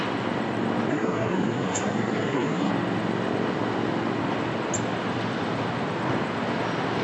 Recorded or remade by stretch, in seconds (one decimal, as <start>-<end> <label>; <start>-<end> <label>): 0.0-0.9 recorded; 0.9-2.7 remade; 2.7-7.0 recorded